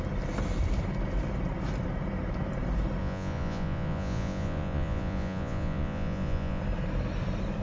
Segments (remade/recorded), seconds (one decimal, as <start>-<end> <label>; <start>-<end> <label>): 0.0-3.0 recorded; 3.0-6.6 remade; 6.6-7.6 recorded